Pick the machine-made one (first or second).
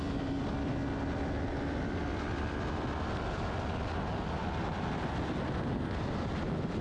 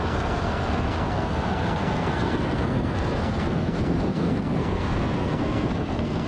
second